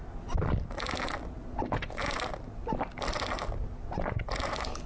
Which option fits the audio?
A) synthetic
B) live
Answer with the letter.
B